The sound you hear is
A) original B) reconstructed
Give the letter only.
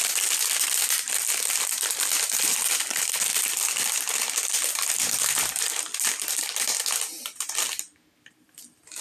A